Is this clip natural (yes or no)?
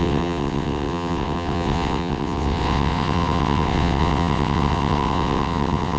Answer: no